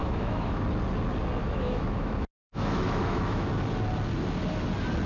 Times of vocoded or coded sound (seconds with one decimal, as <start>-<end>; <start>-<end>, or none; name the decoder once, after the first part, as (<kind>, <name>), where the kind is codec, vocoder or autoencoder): 0.0-0.6 (autoencoder, DAC-VAE); 1.4-3.5